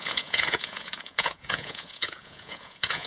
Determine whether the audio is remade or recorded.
remade